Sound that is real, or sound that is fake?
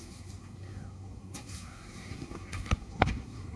fake